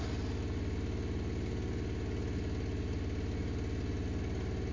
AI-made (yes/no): no